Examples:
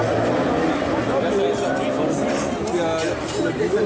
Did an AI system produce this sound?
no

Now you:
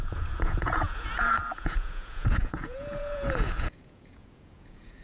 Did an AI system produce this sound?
yes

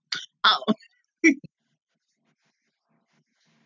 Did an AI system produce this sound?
no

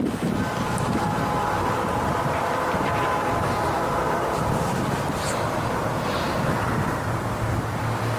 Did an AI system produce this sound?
yes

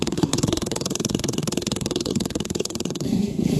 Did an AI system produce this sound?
yes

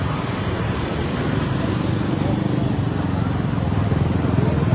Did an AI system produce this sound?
no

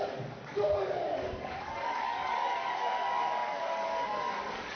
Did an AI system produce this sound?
yes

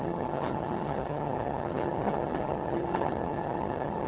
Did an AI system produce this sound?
yes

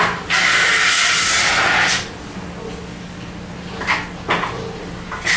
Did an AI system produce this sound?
no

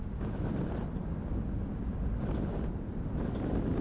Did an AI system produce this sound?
no